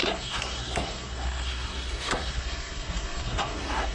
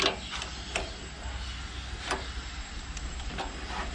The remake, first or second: first